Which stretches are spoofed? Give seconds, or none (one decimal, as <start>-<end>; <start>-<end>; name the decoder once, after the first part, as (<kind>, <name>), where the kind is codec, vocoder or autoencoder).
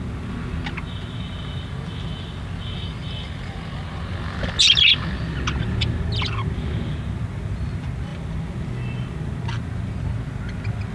none